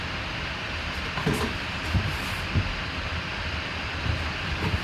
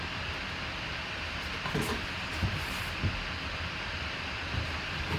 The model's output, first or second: first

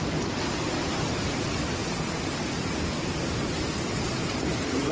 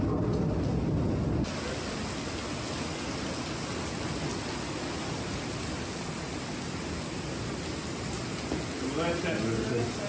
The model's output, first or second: first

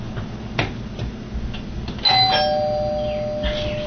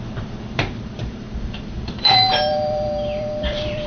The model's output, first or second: second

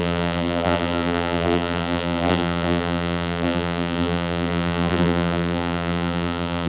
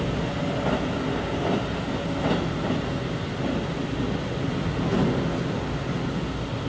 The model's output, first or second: first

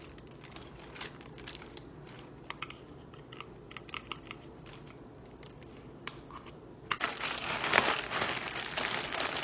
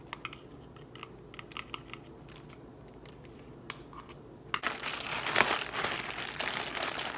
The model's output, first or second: first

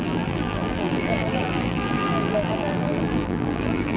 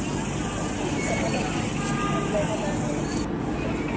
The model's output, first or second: first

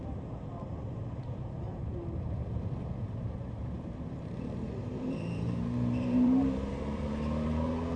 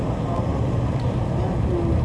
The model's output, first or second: first